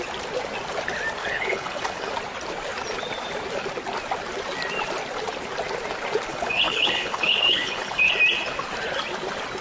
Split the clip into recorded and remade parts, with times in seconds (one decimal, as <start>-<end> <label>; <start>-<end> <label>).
0.0-1.2 recorded; 1.2-2.1 remade; 2.1-6.3 recorded; 6.3-8.1 remade; 8.1-9.6 recorded